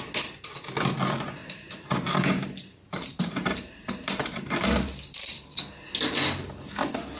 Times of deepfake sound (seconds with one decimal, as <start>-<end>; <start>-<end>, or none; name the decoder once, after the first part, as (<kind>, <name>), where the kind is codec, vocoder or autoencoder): 1.4-5.6 (vocoder, BigVGAN v2)